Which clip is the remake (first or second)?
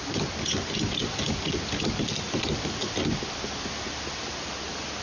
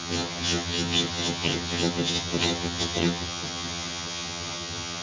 second